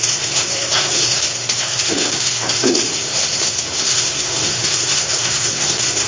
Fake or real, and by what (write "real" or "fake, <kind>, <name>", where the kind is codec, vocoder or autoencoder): fake, codec, SNAC